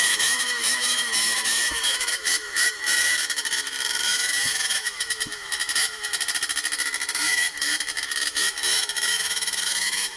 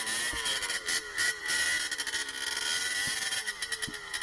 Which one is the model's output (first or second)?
first